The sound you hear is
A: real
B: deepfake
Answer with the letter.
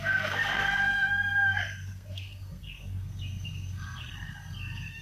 B